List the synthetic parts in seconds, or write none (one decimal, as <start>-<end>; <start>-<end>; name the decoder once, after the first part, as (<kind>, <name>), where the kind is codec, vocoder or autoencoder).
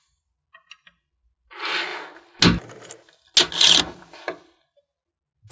none